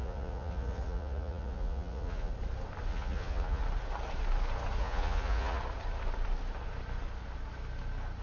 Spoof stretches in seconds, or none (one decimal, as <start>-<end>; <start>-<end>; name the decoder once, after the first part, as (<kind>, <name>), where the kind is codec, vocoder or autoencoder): 0.0-2.3 (vocoder, Vocos); 2.9-3.6; 4.8-5.6